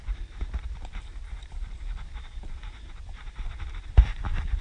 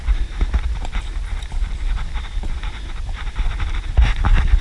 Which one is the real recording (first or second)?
second